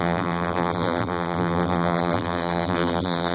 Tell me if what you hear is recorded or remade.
remade